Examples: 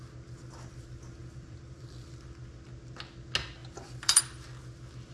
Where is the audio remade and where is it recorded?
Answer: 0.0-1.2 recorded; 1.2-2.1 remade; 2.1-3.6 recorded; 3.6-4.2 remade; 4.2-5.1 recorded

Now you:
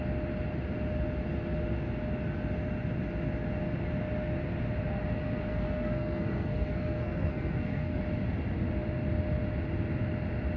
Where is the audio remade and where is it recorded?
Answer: 0.0-5.5 recorded; 5.5-8.0 remade; 8.0-10.6 recorded

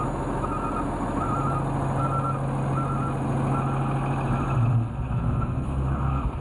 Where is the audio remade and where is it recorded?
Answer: 0.0-4.7 recorded; 4.7-6.4 remade

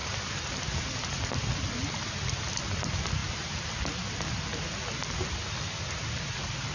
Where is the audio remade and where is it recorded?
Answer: 0.0-0.5 remade; 0.5-6.7 recorded